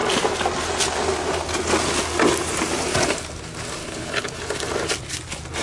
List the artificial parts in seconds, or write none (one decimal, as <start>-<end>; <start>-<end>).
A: 3.8-4.4